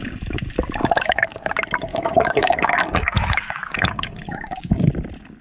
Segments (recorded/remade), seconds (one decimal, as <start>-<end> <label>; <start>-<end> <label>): 0.0-0.8 recorded; 0.8-1.5 remade; 1.5-1.9 recorded; 1.9-4.9 remade; 4.9-5.4 recorded